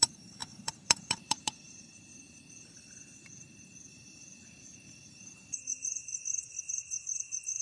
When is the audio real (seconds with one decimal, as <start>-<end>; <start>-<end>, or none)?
6.1-6.7